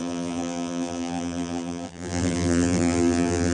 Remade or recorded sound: remade